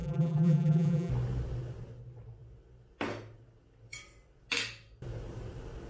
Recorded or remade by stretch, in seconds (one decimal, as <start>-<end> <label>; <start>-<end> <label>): 0.0-1.1 remade; 1.1-5.9 recorded